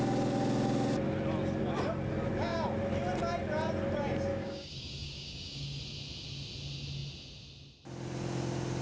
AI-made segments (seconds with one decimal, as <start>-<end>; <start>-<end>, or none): 4.3-5.8